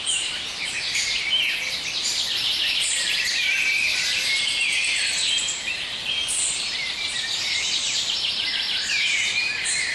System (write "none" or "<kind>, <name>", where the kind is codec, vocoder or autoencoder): vocoder, BigVGAN v2